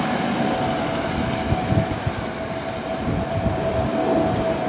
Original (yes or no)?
yes